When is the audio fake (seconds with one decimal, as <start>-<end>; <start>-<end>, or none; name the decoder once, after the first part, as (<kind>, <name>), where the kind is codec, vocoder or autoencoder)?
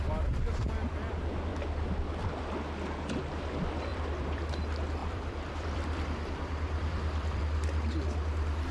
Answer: 1.5-2.1 (vocoder, BigVGAN v2); 3.9-4.5; 5.0-7.4